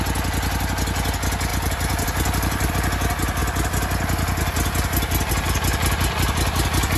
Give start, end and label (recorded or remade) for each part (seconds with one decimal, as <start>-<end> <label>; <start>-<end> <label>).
0.0-1.5 recorded; 1.5-2.7 remade; 2.7-7.0 recorded